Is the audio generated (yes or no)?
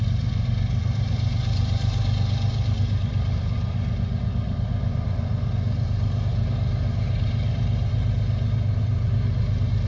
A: yes